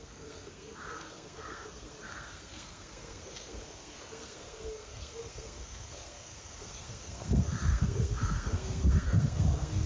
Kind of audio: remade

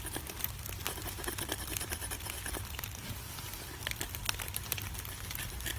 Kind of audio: recorded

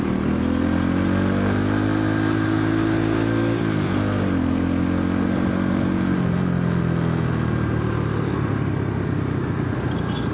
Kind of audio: recorded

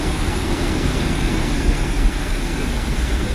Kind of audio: remade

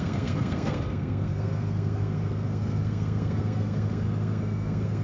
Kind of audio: remade